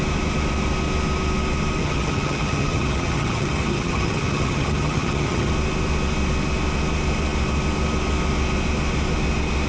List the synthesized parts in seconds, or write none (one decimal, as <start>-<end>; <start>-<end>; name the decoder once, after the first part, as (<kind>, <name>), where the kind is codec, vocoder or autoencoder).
1.8-5.5 (vocoder, HiFi-GAN)